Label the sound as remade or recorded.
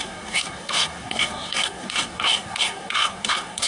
remade